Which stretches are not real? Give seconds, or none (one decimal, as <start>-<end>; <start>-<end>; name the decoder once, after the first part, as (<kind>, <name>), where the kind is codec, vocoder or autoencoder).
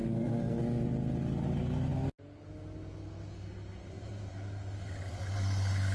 0.0-0.6 (codec, SNAC)